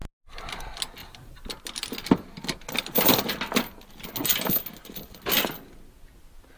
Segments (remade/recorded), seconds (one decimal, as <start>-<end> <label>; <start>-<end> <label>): 0.0-1.0 recorded; 1.0-1.5 remade; 1.5-6.6 recorded